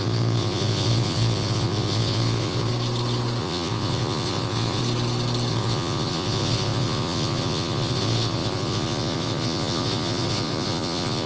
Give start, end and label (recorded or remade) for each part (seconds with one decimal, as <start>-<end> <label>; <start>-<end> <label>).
0.0-2.7 remade; 2.7-3.4 recorded; 3.4-4.8 remade; 4.8-5.5 recorded; 5.5-11.3 remade